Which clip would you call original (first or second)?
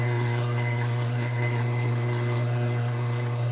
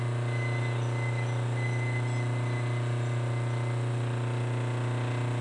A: second